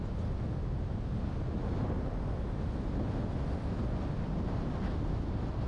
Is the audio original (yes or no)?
yes